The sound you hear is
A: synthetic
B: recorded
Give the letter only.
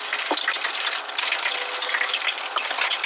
B